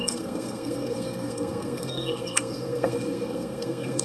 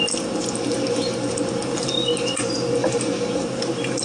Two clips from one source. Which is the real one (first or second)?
second